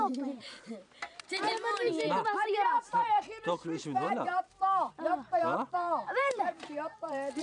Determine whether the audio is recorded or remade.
remade